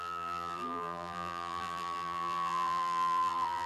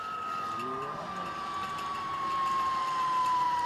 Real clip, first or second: second